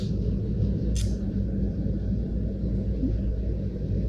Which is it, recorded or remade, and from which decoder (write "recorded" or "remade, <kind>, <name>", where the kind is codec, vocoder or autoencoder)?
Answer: recorded